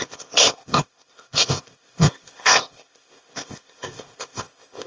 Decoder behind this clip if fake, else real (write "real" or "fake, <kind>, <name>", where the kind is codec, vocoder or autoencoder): fake, codec, ZipCodec